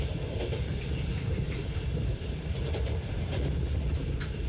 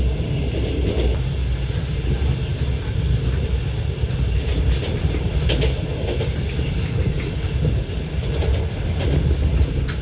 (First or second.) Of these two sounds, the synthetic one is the first